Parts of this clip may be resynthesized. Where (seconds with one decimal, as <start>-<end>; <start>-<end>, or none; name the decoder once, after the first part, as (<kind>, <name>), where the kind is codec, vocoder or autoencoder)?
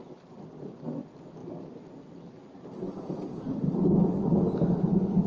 none